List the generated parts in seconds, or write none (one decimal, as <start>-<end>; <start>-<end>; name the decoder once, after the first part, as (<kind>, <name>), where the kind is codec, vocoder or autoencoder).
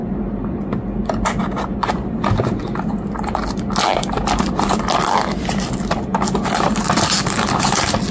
4.0-6.9 (vocoder, BigVGAN v2)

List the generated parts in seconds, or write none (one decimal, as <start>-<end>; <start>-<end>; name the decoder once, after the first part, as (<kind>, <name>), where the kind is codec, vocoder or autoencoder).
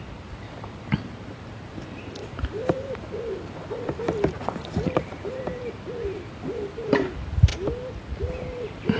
0.0-7.5 (vocoder, BigVGAN v2); 8.3-9.0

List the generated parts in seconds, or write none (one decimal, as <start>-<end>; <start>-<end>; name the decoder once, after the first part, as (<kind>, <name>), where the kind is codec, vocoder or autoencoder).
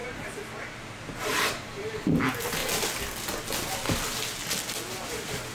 0.8-2.6 (vocoder, BigVGAN v2); 5.1-5.5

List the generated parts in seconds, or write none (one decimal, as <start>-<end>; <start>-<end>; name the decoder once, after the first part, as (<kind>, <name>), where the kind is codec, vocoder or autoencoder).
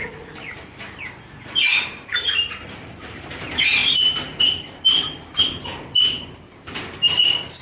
2.1-7.6 (vocoder, BigVGAN v2)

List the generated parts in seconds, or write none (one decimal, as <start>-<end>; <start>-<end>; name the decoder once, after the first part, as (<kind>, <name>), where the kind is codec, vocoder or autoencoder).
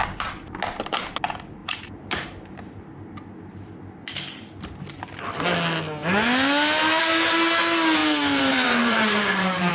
1.6-2.9 (vocoder, BigVGAN v2); 8.0-9.7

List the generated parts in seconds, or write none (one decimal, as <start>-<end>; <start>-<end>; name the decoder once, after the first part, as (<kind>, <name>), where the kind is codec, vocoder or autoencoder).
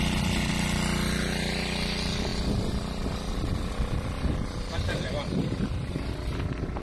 2.3-5.9 (vocoder, BigVGAN v2)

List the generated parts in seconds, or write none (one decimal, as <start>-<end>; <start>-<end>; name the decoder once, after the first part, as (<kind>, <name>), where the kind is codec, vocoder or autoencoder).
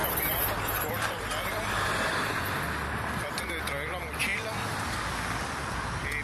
0.0-0.9 (vocoder, BigVGAN v2)